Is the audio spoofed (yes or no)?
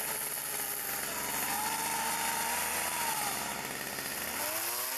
no